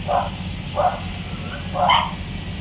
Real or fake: real